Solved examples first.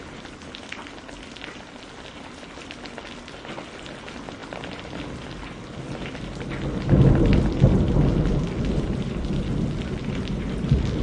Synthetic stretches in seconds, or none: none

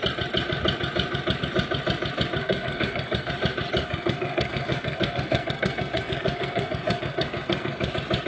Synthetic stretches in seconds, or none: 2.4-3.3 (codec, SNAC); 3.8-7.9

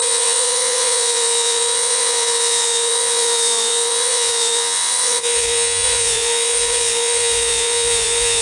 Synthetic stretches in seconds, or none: 0.0-8.4 (vocoder, Vocos)

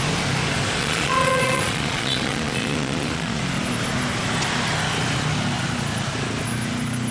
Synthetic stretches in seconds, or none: 0.8-3.4 (vocoder, Vocos)

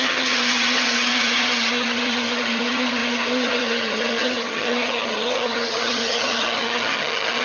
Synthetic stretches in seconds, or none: 0.0-7.4 (vocoder, HiFi-GAN)

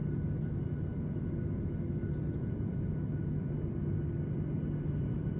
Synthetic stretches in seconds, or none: none